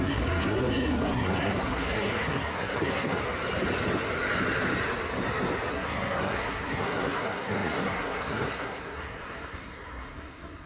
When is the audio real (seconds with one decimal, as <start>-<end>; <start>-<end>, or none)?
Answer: 3.2-5.7